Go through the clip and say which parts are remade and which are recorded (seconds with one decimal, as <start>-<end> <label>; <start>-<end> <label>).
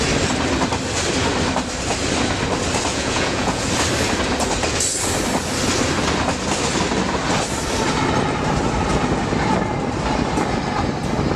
0.0-2.9 recorded; 2.9-3.7 remade; 3.7-11.4 recorded